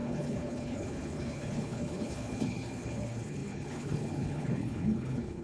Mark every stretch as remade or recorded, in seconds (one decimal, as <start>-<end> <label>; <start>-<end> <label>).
0.0-5.4 remade